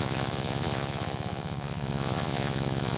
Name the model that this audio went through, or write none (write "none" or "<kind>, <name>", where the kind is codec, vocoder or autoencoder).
vocoder, Vocos